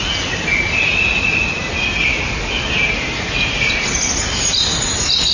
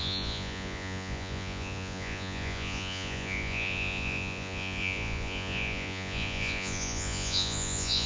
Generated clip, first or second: second